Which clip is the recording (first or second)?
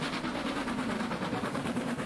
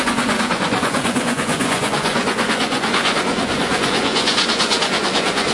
first